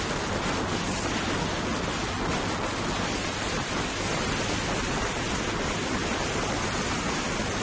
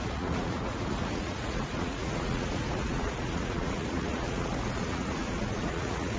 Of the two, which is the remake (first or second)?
second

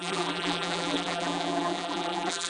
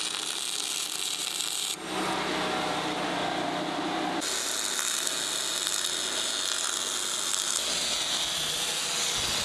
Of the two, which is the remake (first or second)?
first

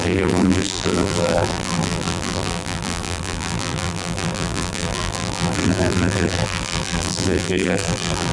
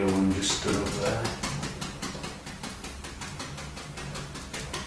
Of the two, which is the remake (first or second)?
first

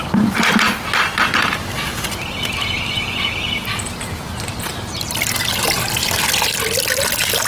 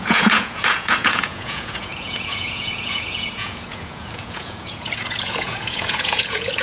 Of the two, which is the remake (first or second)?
second